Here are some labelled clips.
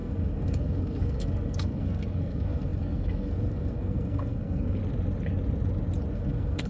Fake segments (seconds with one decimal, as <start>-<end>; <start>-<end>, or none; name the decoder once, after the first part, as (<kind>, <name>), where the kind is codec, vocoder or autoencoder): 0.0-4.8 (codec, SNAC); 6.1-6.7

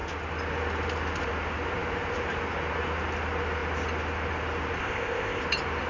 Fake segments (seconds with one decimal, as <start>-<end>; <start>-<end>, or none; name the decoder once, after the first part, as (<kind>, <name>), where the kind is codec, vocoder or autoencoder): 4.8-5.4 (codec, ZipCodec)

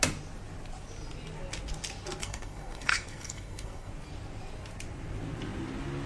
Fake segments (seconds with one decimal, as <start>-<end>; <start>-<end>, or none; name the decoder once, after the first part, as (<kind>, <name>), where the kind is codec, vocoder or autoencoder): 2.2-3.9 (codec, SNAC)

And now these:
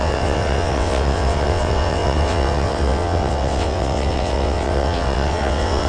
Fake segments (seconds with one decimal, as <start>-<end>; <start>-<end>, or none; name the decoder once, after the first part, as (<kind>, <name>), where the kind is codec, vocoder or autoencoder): 0.0-5.9 (vocoder, WaveNeXt)